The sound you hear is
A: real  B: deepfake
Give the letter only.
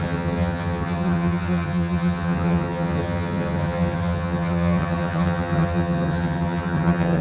B